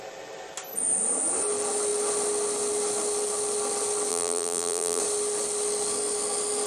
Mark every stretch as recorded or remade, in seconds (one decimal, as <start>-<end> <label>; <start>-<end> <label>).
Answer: 0.0-4.1 recorded; 4.1-5.0 remade; 5.0-6.7 recorded